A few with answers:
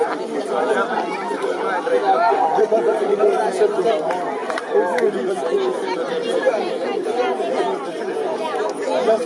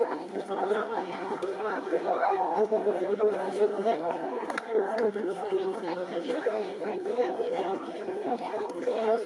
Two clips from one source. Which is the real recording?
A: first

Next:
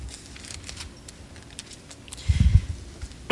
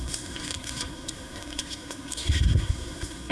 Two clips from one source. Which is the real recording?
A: first